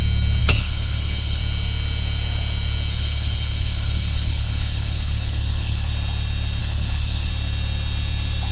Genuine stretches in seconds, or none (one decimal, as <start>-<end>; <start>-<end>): 0.0-0.4; 1.4-2.9; 5.9-6.6; 7.3-8.5